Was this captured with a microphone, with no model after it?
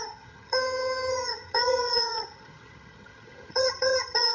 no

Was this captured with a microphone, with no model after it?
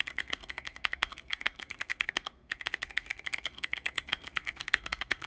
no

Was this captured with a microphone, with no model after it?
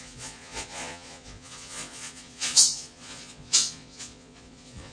no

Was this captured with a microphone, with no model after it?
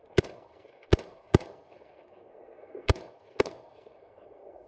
no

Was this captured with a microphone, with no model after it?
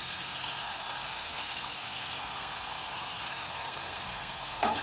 no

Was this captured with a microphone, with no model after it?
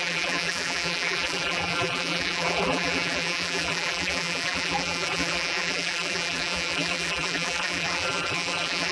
no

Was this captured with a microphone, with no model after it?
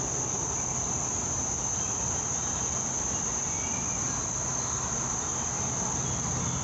yes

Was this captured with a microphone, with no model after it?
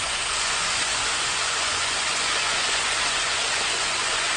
no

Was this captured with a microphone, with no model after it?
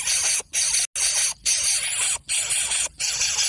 yes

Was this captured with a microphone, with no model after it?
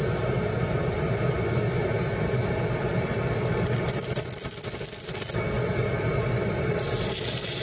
yes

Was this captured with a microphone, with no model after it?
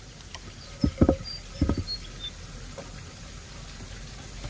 yes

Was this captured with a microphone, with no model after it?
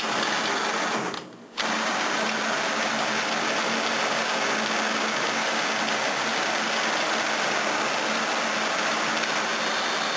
yes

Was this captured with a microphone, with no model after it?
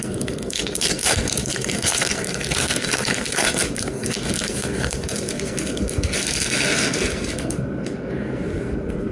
no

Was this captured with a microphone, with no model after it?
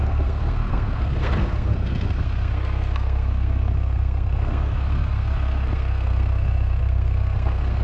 no